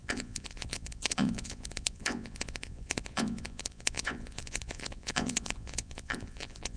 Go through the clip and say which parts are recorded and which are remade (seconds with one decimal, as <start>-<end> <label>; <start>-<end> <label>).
0.0-6.8 remade